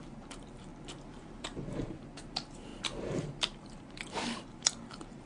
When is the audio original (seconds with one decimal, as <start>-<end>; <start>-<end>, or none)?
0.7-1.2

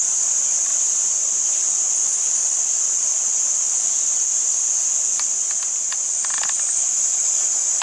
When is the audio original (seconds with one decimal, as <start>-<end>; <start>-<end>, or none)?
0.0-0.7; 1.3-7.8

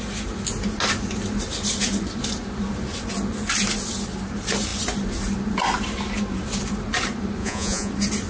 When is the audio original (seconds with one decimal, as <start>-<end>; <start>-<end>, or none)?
0.0-7.4; 7.9-8.3

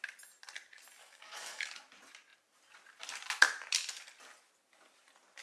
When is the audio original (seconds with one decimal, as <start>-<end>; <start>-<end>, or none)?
0.0-1.0; 1.7-5.4

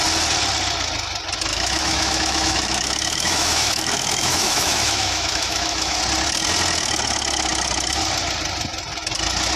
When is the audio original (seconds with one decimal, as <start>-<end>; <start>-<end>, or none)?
0.0-1.5; 6.0-9.6

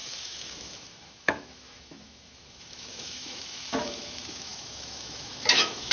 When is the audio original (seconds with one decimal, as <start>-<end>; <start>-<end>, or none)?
none

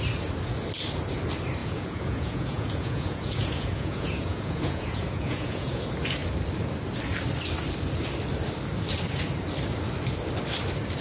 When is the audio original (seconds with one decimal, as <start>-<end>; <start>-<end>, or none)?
0.0-1.6; 5.8-11.0